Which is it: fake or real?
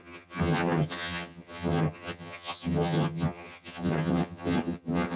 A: fake